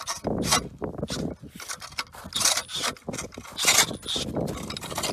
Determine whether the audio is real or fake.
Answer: real